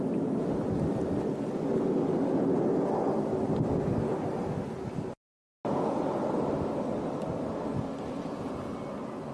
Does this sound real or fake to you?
real